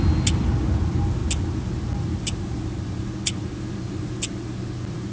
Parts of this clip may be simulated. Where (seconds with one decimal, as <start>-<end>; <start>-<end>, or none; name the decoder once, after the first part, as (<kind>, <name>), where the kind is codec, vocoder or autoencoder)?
none